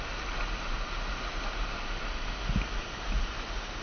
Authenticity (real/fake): real